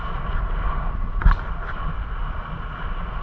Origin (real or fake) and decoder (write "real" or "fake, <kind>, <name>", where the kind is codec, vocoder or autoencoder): real